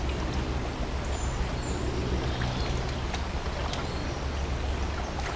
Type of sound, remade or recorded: recorded